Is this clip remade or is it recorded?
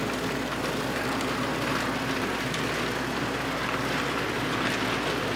recorded